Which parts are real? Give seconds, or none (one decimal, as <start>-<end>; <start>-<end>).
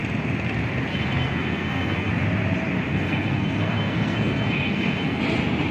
0.0-0.9; 2.1-2.9; 5.2-5.7